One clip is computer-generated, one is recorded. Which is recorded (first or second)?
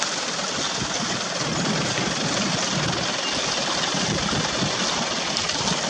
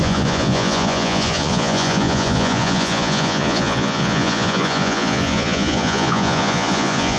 first